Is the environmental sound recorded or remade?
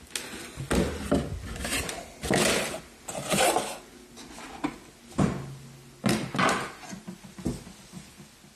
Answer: recorded